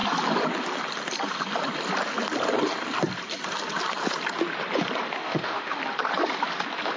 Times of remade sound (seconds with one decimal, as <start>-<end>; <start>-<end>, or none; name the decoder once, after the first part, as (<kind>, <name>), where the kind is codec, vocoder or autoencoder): 5.2-5.8 (autoencoder, DAC-VAE)